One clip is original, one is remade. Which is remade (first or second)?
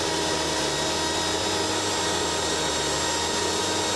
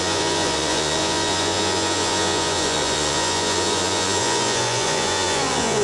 second